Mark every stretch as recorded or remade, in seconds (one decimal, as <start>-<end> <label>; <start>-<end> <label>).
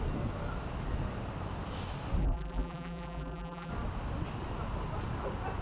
0.0-2.2 recorded; 2.2-3.7 remade; 3.7-5.6 recorded